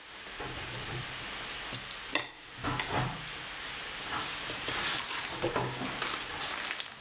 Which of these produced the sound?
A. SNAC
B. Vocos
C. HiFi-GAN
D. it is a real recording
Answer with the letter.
D